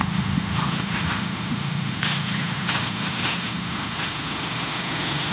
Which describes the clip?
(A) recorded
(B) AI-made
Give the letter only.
B